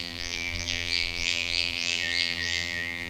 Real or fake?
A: fake